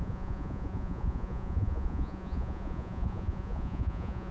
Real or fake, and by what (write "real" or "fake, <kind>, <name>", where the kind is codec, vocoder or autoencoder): fake, vocoder, Vocos